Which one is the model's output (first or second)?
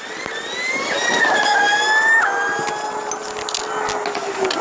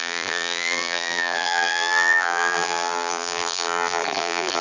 second